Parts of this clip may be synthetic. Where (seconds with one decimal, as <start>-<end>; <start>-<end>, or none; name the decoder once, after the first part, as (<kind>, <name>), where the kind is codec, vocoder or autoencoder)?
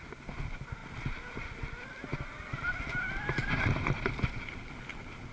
none